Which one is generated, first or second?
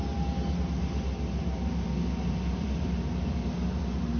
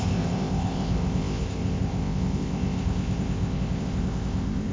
second